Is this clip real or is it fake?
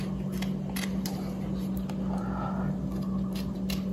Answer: real